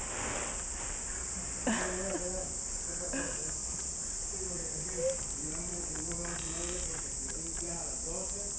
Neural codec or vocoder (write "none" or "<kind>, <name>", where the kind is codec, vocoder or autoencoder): none